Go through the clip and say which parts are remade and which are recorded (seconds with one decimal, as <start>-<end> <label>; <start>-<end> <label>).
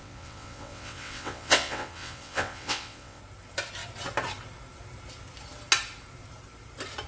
0.0-3.2 remade; 3.2-7.1 recorded